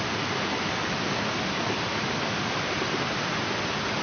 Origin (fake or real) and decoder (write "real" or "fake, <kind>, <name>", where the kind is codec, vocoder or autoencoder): real